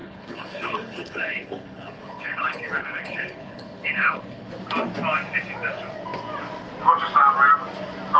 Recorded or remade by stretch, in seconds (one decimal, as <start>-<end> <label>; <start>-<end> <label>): 0.0-4.5 remade; 4.5-8.2 recorded